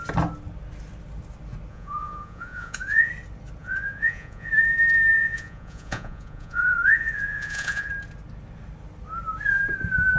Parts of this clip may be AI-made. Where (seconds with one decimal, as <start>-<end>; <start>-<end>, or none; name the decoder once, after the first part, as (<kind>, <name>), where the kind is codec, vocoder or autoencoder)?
1.7-3.1 (vocoder, Vocos); 3.6-4.5; 5.1-7.9